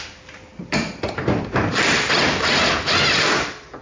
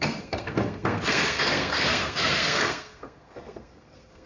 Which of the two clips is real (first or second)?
first